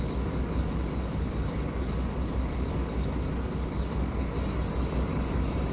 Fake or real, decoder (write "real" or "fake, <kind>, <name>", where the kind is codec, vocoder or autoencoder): fake, codec, DAC